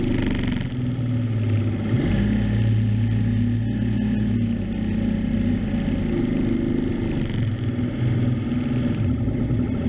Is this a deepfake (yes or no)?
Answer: no